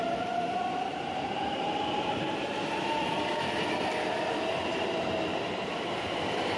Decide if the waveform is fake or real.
fake